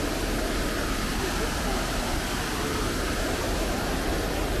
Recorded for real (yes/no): yes